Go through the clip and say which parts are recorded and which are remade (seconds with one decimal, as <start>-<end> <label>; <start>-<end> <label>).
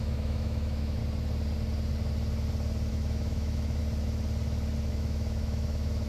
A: 0.0-1.0 remade; 1.0-2.9 recorded; 2.9-3.8 remade; 3.8-4.9 recorded; 4.9-6.1 remade